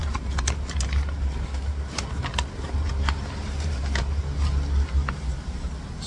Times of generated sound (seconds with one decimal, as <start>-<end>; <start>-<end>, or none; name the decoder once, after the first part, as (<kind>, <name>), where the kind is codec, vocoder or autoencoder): 0.0-2.9 (vocoder, BigVGAN v2); 3.4-4.0